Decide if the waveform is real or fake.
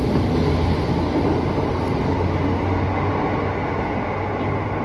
real